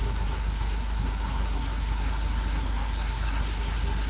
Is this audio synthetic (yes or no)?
yes